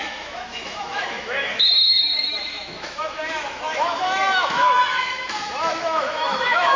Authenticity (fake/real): fake